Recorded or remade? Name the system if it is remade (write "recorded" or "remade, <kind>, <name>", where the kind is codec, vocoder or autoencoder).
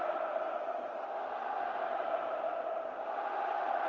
recorded